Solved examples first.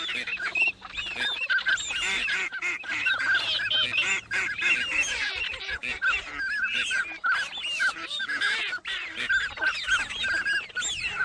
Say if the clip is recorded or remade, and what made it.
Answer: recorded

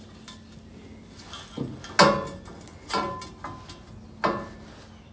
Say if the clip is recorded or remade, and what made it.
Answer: recorded